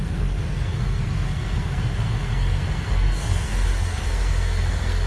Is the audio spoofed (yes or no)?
yes